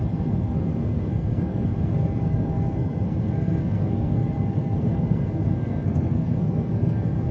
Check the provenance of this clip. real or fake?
fake